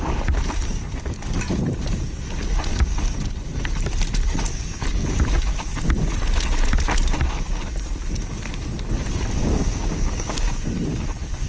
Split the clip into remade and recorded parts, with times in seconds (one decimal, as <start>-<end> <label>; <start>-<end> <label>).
0.0-9.4 recorded; 9.4-10.4 remade; 10.4-11.5 recorded